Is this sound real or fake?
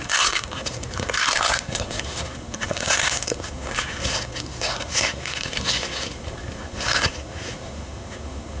fake